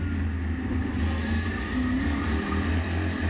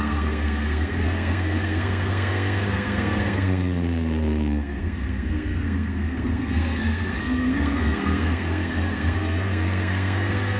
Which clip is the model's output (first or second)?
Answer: second